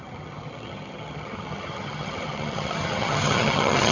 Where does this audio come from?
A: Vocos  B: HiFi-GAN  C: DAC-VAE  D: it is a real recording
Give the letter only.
B